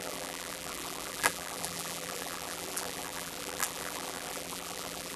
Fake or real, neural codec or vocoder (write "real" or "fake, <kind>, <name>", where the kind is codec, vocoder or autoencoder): fake, vocoder, BigVGAN v2